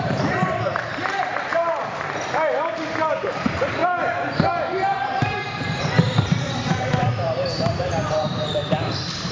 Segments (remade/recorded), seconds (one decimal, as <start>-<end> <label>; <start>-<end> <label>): 0.0-3.8 remade; 3.8-4.5 recorded; 4.5-9.3 remade